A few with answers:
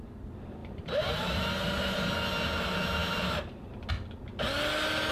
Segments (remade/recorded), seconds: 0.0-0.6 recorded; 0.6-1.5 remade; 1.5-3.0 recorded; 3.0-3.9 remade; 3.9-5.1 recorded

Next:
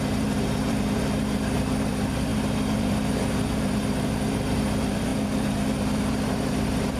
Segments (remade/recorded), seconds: 0.0-7.0 remade